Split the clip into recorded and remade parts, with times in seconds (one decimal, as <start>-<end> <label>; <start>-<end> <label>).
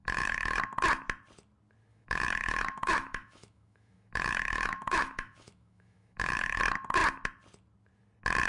0.0-0.6 remade; 0.6-1.9 recorded; 1.9-6.6 remade; 6.6-8.5 recorded